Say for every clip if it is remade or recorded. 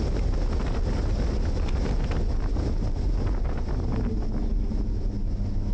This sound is recorded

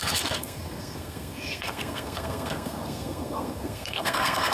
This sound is remade